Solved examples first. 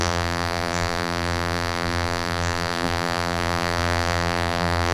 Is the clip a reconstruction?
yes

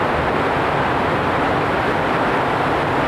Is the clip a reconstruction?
no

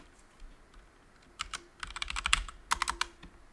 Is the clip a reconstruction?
no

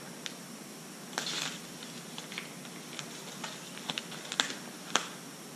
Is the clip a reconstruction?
no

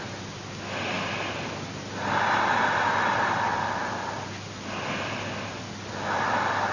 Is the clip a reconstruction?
no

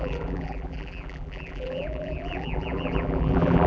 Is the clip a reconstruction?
yes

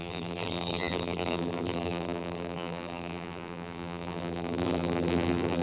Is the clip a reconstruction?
yes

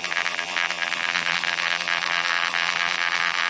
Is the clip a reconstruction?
yes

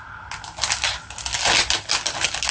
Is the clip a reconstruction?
no